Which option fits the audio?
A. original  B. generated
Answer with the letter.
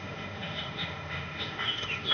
B